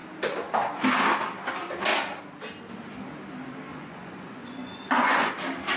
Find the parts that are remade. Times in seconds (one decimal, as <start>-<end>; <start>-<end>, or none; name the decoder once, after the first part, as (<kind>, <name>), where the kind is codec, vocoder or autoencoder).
3.7-5.3 (vocoder, Vocos)